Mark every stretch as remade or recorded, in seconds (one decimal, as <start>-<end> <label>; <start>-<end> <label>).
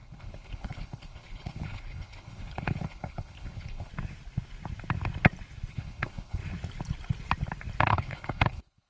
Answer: 0.0-3.9 remade; 3.9-5.7 recorded; 5.7-6.4 remade; 6.4-7.8 recorded; 7.8-8.9 remade